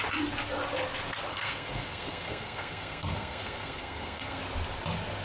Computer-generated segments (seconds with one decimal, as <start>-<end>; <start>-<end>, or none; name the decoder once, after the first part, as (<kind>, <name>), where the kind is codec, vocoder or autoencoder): 1.3-4.4 (codec, SNAC)